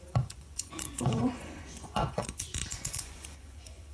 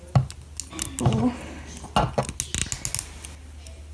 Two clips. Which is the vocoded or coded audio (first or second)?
first